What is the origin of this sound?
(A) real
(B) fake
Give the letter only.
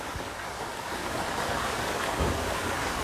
B